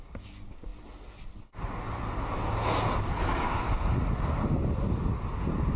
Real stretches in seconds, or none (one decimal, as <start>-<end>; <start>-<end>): 0.0-5.8